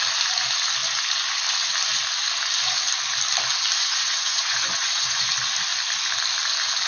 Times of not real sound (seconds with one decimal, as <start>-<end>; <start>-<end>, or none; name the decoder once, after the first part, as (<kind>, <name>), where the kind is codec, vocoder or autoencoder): 3.8-5.3 (vocoder, Vocos)